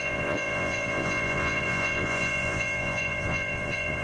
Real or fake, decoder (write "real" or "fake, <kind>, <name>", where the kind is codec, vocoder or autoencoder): fake, vocoder, Vocos